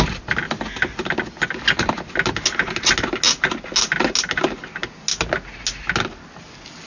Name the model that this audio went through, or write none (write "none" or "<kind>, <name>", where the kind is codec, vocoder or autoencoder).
none